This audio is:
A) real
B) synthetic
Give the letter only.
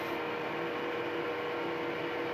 A